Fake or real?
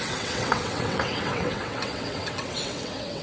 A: fake